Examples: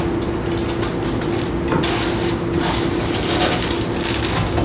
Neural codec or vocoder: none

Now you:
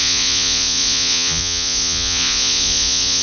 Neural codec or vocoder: vocoder, Vocos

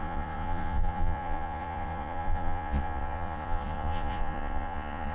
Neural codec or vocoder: vocoder, Vocos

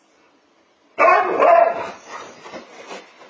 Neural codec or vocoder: none